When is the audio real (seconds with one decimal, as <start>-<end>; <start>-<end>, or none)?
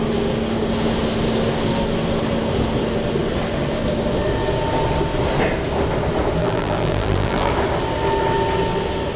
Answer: 0.0-6.4; 7.5-9.2